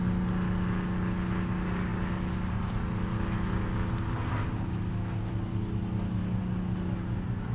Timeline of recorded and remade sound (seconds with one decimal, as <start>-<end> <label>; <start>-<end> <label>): 0.0-7.5 recorded